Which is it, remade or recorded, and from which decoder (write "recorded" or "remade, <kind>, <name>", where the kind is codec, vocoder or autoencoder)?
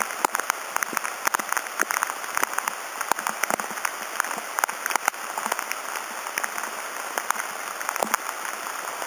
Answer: recorded